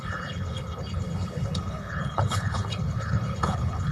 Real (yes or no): no